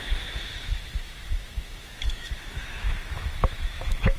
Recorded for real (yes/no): no